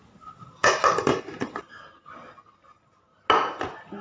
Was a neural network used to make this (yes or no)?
no